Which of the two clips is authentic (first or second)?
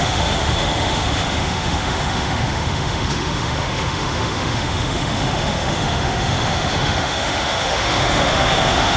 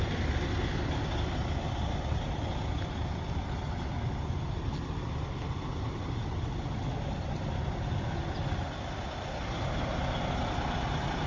second